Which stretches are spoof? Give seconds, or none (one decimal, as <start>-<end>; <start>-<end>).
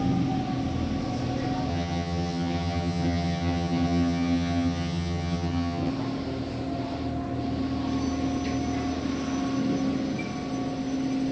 1.7-5.9